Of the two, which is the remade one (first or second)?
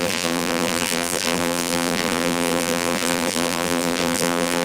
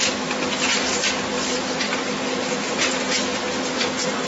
first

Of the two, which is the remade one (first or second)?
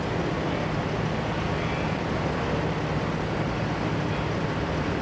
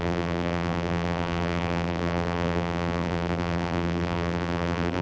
second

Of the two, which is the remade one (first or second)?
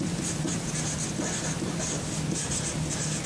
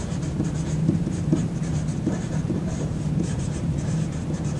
second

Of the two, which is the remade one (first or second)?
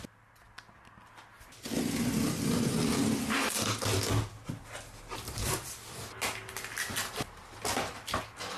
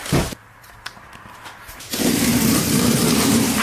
second